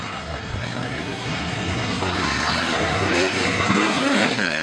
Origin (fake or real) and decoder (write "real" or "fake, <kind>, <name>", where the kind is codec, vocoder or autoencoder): fake, codec, SNAC